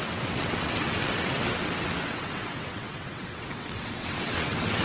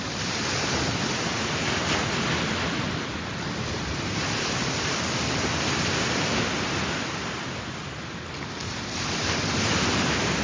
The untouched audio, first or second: second